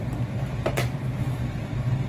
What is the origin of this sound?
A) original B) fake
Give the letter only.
A